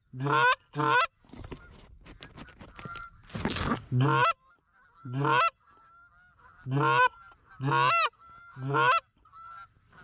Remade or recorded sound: recorded